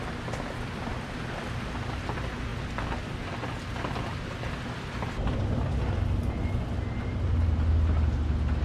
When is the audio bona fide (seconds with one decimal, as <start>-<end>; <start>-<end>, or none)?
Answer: 0.0-8.6